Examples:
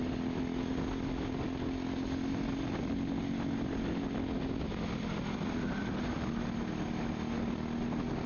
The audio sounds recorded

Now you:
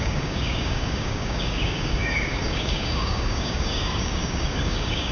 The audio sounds remade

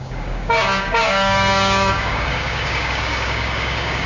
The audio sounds remade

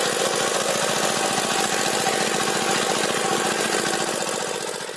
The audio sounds recorded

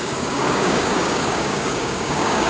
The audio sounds remade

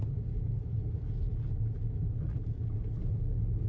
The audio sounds recorded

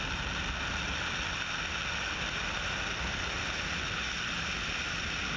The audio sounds recorded